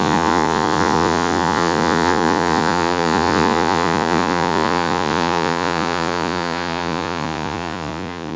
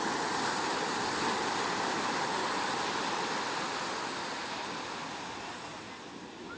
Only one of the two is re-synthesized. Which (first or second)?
first